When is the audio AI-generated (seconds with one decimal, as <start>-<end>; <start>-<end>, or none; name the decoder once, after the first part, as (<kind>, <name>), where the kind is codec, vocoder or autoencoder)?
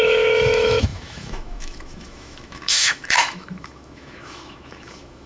0.0-5.3 (autoencoder, DAC-VAE)